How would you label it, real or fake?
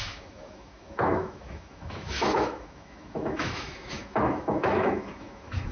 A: fake